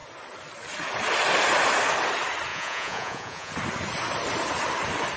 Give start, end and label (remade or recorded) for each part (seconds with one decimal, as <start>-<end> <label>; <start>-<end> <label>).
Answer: 0.0-2.5 recorded; 2.5-3.5 remade; 3.5-5.2 recorded